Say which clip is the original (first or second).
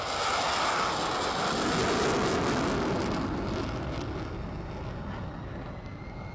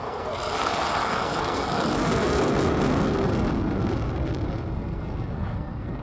first